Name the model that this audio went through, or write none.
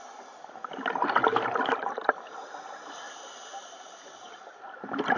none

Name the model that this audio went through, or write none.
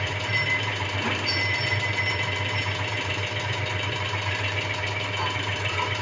vocoder, BigVGAN v2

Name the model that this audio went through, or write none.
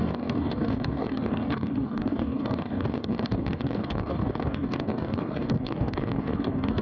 codec, DAC